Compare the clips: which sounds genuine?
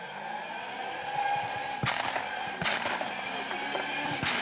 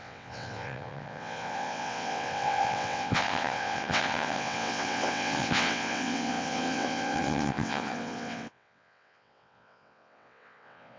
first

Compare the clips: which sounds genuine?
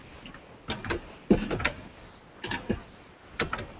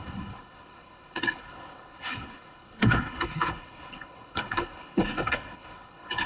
first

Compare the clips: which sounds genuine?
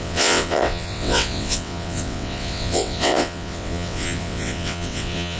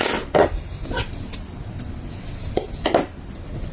second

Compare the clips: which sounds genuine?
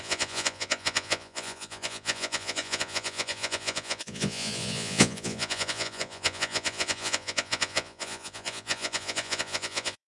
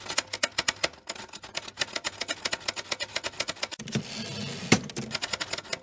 second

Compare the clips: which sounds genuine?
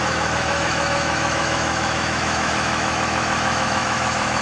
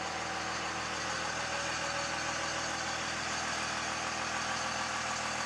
second